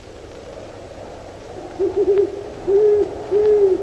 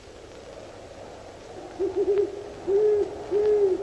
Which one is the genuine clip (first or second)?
second